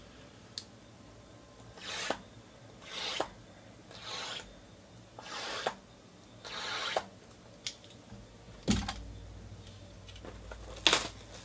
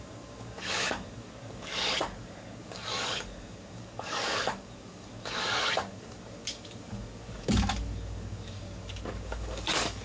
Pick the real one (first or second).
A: first